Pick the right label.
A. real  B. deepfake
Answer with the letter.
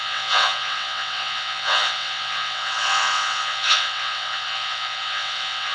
B